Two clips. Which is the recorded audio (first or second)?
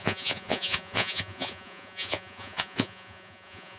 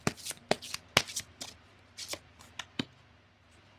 second